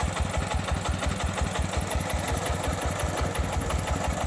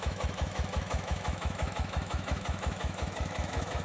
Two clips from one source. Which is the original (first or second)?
first